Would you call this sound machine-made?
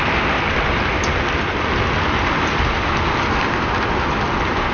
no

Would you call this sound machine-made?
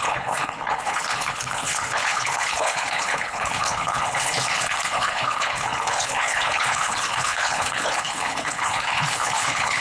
yes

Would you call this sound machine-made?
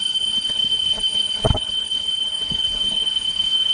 yes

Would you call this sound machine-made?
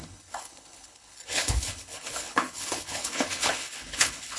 yes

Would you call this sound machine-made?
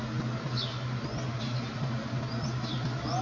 no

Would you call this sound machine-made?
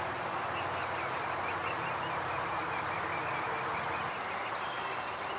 no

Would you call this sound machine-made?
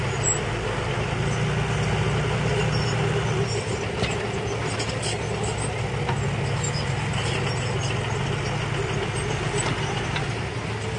no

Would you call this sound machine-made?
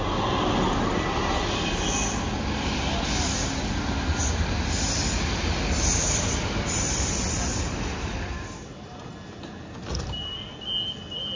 no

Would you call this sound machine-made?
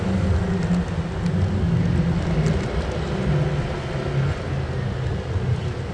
no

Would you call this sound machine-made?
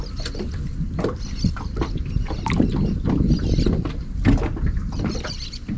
no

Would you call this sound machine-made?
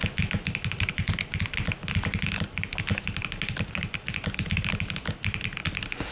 no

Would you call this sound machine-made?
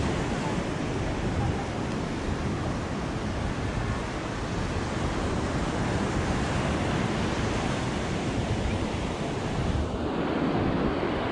no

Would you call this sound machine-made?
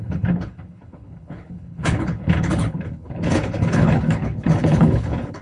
yes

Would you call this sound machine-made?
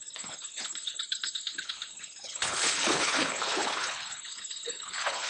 yes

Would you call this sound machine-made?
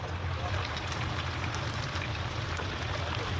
no